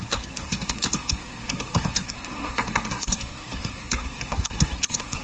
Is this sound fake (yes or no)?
yes